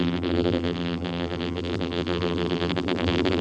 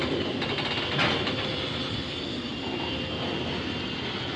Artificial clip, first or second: first